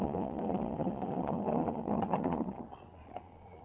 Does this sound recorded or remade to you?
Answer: remade